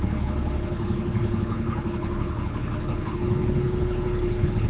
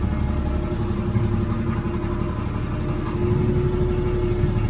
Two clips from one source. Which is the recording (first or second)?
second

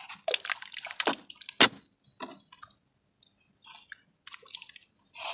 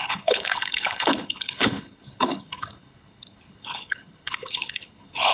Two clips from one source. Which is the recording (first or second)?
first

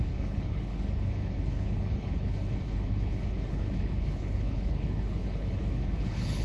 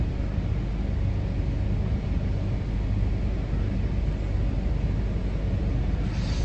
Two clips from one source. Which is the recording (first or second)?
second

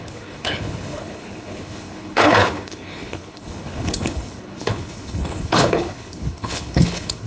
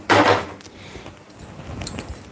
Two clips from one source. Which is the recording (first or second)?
second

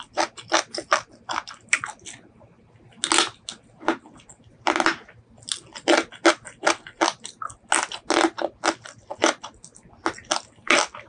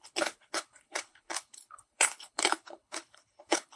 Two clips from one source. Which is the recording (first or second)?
first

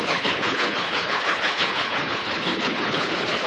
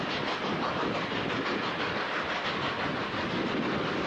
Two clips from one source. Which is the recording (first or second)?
second